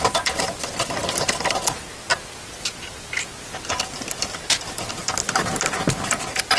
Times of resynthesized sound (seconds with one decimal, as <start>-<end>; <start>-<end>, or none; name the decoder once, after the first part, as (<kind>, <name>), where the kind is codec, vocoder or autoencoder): none

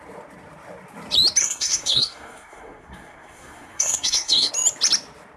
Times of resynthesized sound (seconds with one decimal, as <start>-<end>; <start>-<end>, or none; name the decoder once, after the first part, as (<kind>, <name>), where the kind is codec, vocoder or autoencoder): 1.4-4.5 (codec, SNAC)

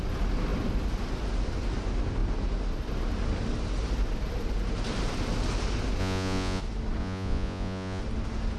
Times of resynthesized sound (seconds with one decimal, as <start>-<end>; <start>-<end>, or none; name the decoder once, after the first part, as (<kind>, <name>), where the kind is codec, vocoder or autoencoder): 6.0-6.6 (vocoder, Vocos); 7.0-8.0